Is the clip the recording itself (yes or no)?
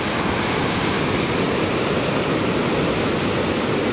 yes